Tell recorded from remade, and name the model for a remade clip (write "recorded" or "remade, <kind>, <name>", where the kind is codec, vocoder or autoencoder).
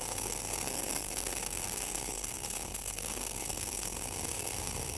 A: remade, codec, SNAC